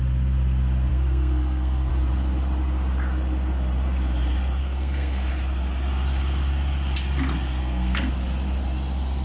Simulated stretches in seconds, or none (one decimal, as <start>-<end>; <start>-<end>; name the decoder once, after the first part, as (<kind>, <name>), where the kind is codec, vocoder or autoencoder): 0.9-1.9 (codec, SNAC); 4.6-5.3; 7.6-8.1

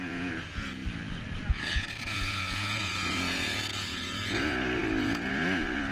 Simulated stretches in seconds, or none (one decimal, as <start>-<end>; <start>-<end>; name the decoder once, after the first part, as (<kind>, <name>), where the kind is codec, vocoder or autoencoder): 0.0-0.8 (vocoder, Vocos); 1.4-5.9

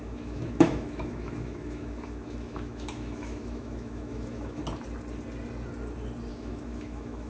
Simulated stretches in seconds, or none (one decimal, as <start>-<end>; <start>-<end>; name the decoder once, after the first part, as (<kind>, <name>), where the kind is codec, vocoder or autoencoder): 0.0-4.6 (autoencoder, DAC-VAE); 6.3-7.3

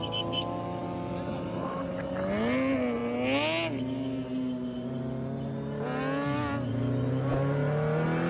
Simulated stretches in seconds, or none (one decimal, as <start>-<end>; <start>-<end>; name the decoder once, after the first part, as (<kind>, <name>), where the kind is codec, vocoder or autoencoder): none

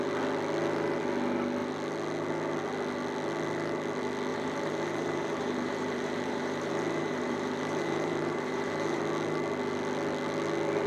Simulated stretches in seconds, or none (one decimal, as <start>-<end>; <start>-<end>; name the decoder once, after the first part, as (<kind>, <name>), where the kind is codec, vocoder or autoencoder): 4.3-9.0 (vocoder, BigVGAN v2)

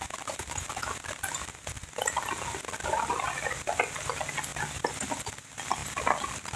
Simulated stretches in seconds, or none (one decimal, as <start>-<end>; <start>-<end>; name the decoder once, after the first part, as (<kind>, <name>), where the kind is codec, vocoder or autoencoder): none

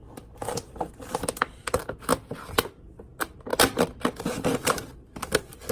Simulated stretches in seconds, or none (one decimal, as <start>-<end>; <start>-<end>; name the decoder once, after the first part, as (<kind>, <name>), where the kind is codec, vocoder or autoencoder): none

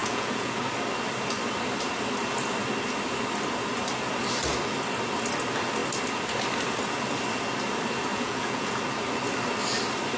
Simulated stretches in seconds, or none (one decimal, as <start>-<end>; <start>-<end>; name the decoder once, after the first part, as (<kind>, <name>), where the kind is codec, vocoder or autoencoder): 0.0-0.6 (vocoder, Vocos); 8.1-8.8